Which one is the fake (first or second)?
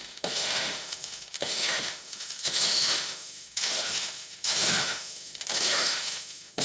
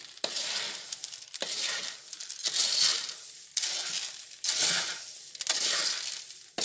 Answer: first